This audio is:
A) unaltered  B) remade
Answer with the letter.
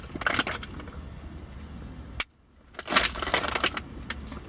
A